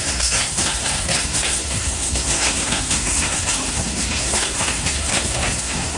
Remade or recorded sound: remade